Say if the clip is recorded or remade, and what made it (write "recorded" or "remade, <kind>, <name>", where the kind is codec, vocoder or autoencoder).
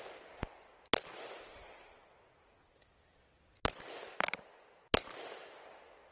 recorded